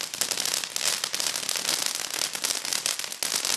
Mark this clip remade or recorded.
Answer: remade